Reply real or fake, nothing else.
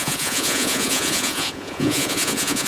fake